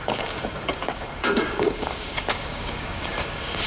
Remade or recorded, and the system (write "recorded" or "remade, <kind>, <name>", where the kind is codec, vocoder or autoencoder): remade, codec, DAC